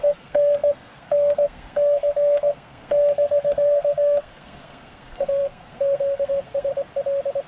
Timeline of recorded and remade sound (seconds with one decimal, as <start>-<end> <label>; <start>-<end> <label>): 0.0-6.7 remade; 6.7-7.5 recorded